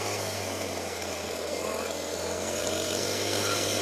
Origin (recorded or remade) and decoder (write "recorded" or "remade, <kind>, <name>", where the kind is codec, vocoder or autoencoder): remade, codec, SNAC